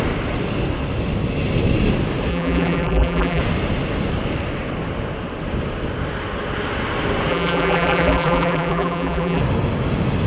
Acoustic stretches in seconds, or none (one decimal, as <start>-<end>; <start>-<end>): 0.0-2.3; 3.4-7.3; 9.4-10.3